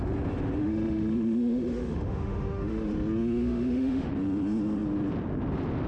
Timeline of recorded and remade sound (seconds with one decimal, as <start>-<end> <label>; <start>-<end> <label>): 0.0-0.6 recorded; 0.6-2.9 remade; 2.9-3.4 recorded; 3.4-4.1 remade; 4.1-5.9 recorded